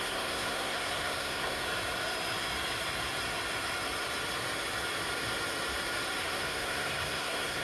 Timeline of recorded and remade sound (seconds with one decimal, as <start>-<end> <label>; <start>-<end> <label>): 0.0-1.6 remade; 1.6-6.2 recorded; 6.2-7.6 remade